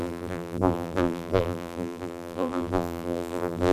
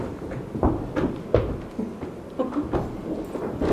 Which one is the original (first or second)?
second